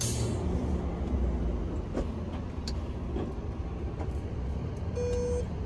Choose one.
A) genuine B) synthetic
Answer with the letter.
A